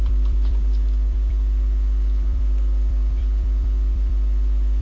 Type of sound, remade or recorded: remade